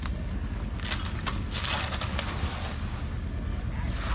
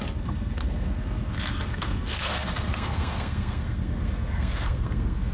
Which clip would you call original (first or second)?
first